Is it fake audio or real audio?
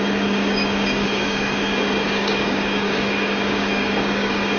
fake